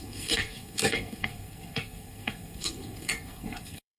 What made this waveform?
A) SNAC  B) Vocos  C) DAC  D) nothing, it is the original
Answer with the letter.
A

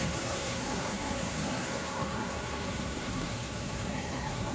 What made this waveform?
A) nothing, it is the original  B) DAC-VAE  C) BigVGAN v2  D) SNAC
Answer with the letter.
D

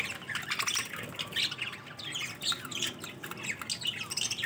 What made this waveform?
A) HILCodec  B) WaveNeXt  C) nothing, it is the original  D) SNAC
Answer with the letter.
C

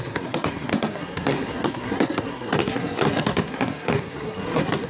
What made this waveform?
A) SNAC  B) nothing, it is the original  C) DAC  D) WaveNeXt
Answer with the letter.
A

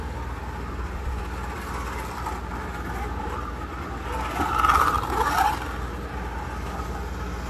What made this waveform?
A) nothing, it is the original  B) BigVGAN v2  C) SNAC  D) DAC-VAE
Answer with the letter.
A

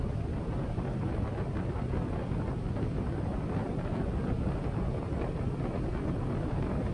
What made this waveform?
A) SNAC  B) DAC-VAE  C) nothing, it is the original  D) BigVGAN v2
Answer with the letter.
C